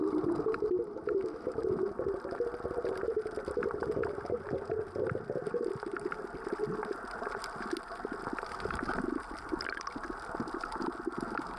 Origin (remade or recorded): recorded